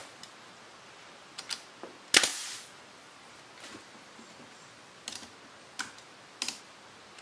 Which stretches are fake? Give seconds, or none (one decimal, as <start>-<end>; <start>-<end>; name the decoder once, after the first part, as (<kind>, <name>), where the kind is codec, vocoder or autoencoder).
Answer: none